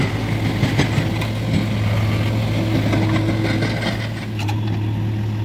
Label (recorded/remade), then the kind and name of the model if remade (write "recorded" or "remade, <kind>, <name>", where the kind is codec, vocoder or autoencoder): recorded